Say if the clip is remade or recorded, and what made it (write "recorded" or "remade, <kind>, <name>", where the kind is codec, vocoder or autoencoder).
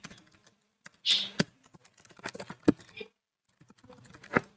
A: recorded